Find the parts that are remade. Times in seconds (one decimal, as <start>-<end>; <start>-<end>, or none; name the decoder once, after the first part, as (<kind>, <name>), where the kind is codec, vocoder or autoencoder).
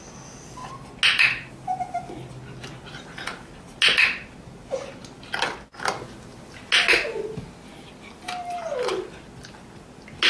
none